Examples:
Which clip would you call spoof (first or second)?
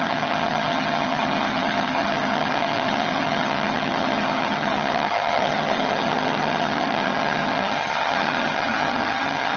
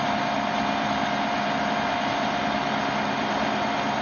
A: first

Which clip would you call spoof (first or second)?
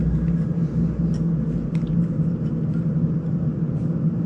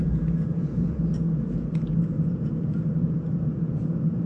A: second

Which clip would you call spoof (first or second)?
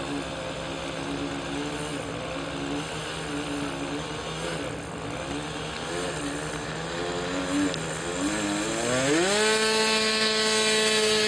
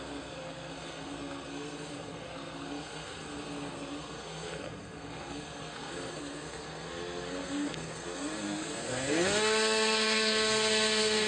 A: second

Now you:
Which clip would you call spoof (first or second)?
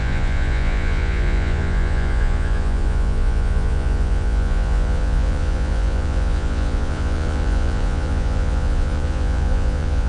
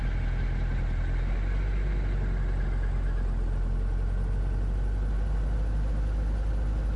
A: first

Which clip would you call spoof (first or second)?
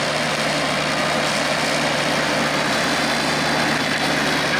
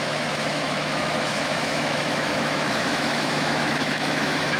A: second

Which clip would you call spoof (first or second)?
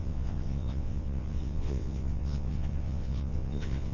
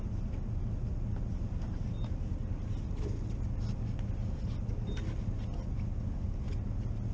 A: first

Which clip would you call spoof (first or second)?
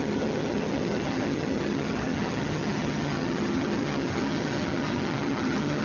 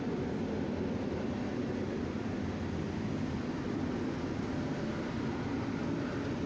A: first